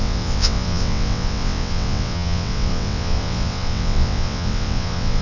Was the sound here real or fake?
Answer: fake